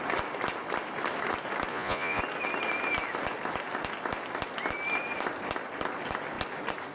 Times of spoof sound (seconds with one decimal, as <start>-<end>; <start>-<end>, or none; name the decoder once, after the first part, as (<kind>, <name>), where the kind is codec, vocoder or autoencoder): 1.7-2.2 (vocoder, Vocos)